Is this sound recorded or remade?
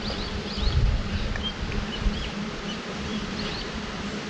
remade